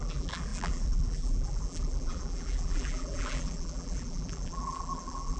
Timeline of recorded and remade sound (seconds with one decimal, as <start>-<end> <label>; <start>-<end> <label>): 0.0-5.4 remade